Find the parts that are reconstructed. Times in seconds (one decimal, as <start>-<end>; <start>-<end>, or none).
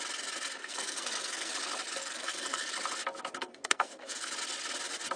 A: 0.6-1.5; 2.0-2.7; 3.4-4.3